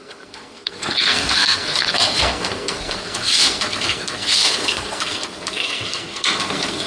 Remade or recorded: remade